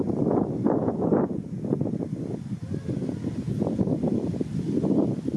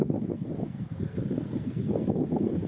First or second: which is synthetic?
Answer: second